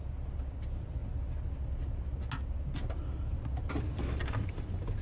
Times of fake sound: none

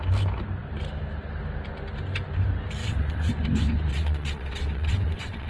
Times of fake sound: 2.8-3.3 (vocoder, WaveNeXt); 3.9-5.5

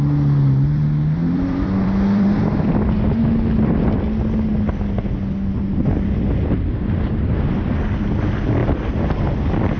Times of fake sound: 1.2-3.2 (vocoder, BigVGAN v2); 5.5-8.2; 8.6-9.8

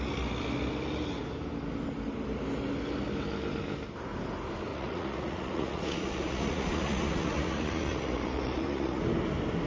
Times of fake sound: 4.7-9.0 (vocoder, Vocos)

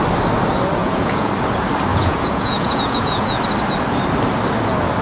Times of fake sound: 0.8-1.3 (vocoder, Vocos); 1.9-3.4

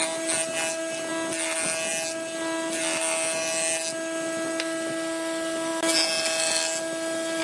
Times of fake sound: none